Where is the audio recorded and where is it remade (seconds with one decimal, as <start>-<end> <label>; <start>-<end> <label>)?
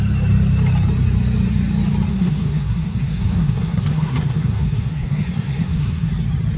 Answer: 0.0-2.1 recorded; 2.1-6.1 remade; 6.1-6.6 recorded